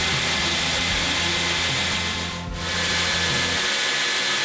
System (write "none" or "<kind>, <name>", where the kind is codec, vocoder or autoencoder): none